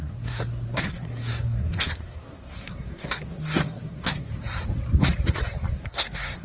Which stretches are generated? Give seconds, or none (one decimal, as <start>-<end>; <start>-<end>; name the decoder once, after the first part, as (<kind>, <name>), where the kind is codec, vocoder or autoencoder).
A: 0.0-4.3 (codec, SNAC); 5.7-6.4